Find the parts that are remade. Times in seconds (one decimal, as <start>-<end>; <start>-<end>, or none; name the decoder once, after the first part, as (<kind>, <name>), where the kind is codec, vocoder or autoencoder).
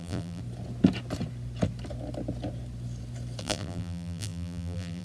0.0-0.4 (vocoder, BigVGAN v2); 3.4-5.0